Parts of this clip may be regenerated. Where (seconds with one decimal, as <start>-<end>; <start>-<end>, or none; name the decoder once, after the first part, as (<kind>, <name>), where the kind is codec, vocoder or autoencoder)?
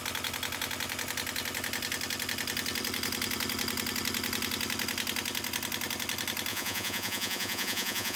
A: 6.5-8.2 (vocoder, Vocos)